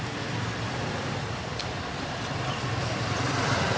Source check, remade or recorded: remade